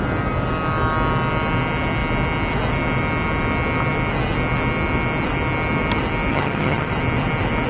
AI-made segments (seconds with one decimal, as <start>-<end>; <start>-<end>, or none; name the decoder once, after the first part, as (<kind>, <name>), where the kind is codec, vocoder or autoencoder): 6.3-6.9 (vocoder, HiFi-GAN)